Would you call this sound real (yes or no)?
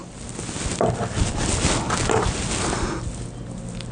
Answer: yes